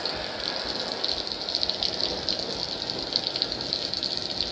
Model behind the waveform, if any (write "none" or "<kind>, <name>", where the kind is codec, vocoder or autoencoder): none